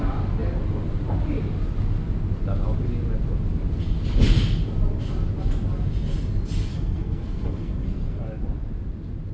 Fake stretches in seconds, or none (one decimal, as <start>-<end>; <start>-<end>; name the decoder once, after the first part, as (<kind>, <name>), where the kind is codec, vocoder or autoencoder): 6.7-8.2 (codec, SNAC)